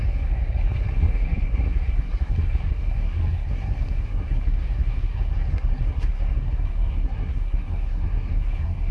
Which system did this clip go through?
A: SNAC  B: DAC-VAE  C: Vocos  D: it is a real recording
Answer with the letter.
A